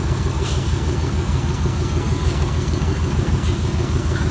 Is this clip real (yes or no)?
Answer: no